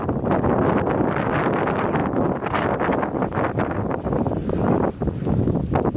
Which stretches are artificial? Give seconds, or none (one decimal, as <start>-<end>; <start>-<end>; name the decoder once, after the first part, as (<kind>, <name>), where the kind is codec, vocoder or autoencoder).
none